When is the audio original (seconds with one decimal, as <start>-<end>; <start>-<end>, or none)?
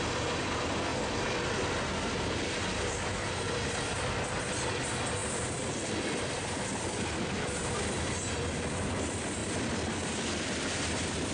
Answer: 0.0-0.9; 1.5-5.2; 7.7-9.4; 10.8-11.3